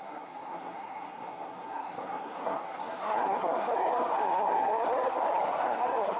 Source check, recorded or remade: remade